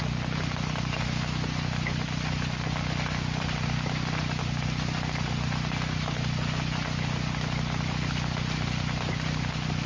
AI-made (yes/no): no